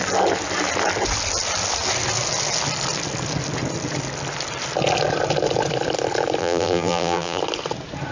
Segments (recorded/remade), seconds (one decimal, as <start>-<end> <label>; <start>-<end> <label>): 0.0-6.4 recorded; 6.4-7.4 remade; 7.4-8.1 recorded